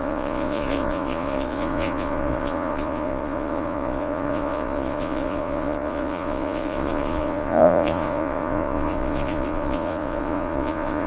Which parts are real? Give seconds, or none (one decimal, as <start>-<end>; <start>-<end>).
none